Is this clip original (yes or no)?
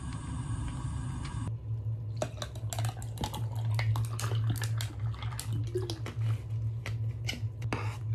yes